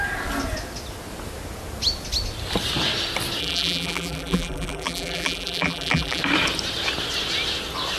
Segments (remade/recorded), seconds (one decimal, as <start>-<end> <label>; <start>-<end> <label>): 0.0-3.4 recorded; 3.4-6.2 remade; 6.2-8.0 recorded